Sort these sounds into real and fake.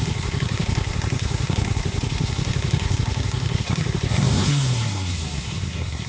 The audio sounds fake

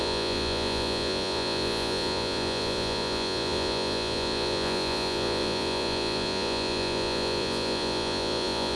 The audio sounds fake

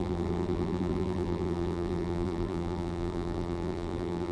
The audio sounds fake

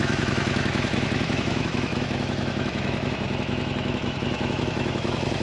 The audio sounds fake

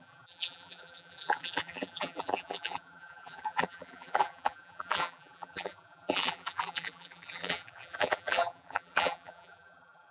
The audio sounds fake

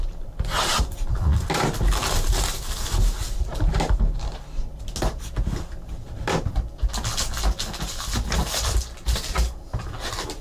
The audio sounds real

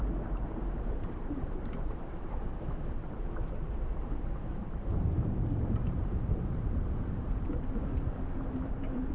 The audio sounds fake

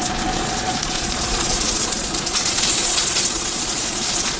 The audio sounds fake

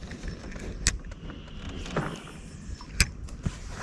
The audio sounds real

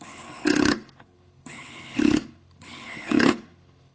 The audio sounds fake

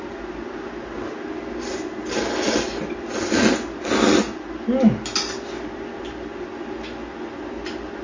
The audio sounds real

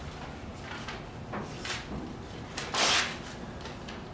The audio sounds real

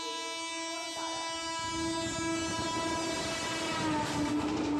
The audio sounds real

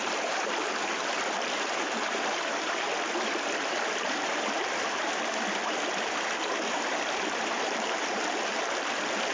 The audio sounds fake